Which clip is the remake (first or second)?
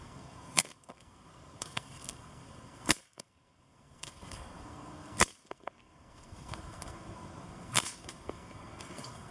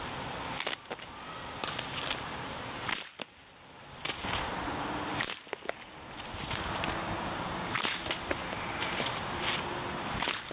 first